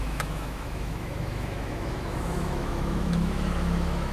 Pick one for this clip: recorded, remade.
remade